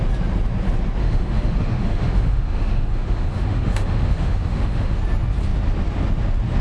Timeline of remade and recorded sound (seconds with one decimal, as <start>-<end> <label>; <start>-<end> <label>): 0.0-1.0 recorded; 1.0-5.0 remade; 5.0-6.6 recorded